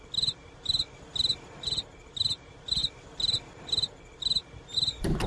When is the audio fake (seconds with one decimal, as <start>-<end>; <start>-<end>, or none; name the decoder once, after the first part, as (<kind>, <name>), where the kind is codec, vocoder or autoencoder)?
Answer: none